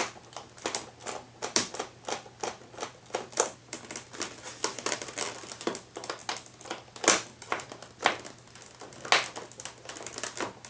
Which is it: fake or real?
real